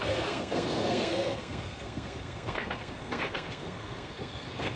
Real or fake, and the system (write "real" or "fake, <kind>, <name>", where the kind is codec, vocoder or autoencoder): fake, codec, SNAC